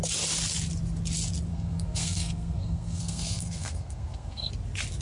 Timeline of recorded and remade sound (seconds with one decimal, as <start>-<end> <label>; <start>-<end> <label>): 0.0-1.5 recorded; 1.5-4.5 remade; 4.5-5.0 recorded